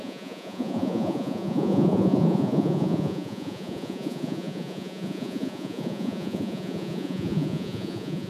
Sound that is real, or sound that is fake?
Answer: fake